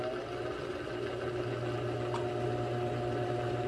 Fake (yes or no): no